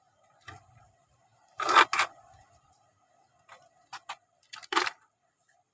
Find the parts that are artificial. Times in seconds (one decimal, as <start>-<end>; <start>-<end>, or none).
0.0-1.3; 4.2-5.7